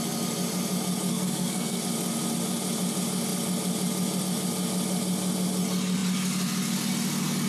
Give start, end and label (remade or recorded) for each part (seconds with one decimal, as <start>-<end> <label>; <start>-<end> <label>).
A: 0.0-1.1 recorded; 1.1-1.8 remade; 1.8-7.5 recorded